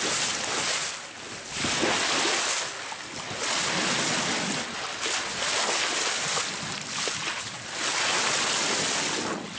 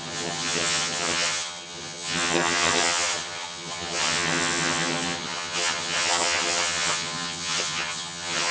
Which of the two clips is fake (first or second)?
second